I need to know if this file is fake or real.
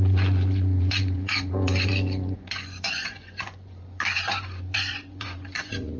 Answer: fake